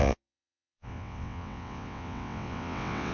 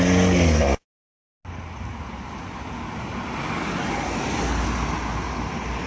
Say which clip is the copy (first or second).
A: first